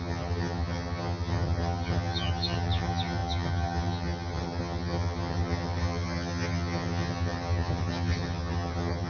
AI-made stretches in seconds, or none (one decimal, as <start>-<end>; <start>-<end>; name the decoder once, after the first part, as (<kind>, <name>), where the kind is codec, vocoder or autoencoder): 0.0-9.1 (vocoder, HiFi-GAN)